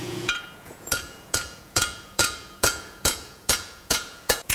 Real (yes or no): no